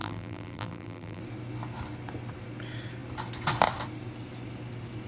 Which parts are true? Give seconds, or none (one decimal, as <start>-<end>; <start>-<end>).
1.2-5.1